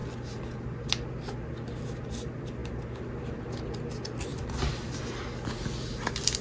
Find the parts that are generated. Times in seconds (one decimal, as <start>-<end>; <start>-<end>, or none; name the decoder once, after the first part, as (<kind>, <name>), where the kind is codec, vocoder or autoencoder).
none